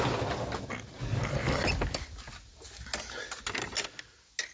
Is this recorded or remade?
recorded